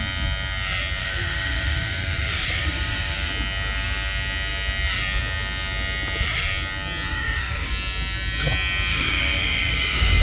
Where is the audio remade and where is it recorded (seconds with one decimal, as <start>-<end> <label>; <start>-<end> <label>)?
0.0-1.0 recorded; 1.0-3.3 remade; 3.3-7.1 recorded; 7.1-7.7 remade; 7.7-8.9 recorded; 8.9-10.2 remade